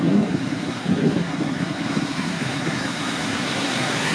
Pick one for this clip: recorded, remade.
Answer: remade